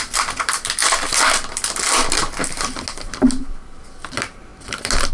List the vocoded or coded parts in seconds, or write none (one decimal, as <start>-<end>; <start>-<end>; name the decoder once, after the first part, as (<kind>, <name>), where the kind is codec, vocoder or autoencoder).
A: none